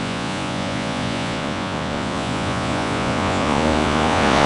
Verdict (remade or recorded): remade